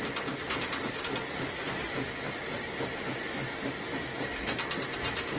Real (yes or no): yes